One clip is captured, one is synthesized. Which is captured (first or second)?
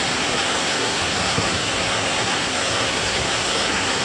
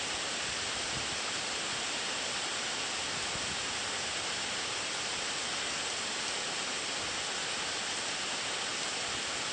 second